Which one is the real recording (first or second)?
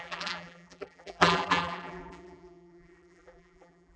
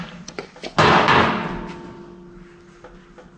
second